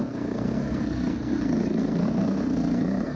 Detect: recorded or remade remade